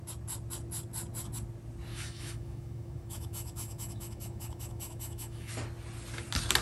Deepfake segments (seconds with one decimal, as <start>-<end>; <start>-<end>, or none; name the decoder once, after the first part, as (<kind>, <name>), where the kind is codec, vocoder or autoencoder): 1.9-5.5 (autoencoder, DAC-VAE)